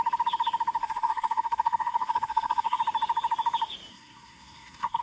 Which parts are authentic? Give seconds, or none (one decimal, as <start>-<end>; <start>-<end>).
0.0-0.8; 2.8-3.9